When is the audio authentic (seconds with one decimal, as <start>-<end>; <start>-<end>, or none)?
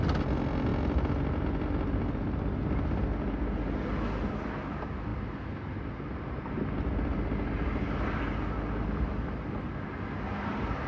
0.0-10.9